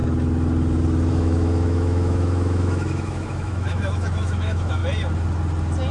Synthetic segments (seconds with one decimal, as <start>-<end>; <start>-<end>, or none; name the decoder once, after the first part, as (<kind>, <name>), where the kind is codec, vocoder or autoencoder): 1.1-4.8 (autoencoder, DAC-VAE)